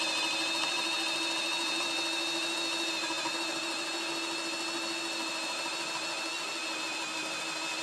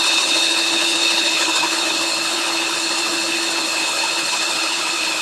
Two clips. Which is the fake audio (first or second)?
second